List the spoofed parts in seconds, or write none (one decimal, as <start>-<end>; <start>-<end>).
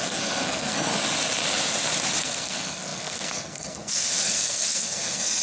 0.0-0.9; 2.2-5.4